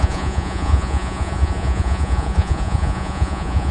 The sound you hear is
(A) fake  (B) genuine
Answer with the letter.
A